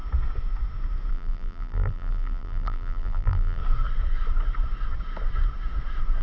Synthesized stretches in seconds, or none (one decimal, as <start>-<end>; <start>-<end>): 1.1-3.6